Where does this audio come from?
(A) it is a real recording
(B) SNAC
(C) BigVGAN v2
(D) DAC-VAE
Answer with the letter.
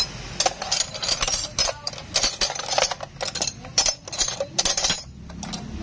A